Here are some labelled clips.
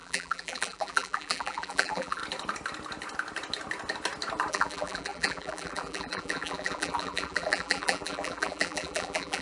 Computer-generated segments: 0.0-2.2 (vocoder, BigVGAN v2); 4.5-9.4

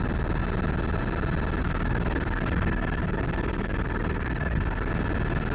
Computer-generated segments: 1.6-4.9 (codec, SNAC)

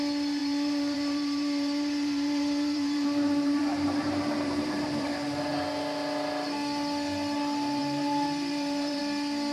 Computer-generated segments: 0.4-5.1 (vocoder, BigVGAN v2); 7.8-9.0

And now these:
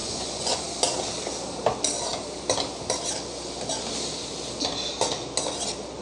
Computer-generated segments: 0.0-0.6 (vocoder, Vocos)

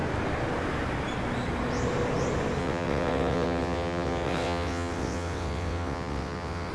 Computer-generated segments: 2.6-6.7 (vocoder, WaveNeXt)

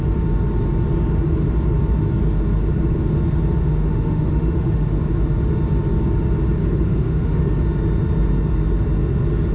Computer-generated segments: 3.6-5.0 (autoencoder, DAC-VAE); 6.6-7.4

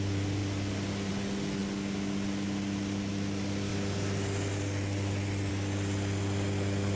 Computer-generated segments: none

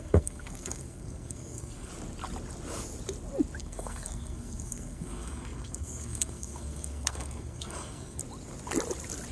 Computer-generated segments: 0.0-1.9 (codec, SNAC); 3.6-8.2